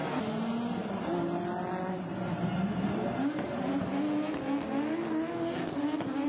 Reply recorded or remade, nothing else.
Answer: recorded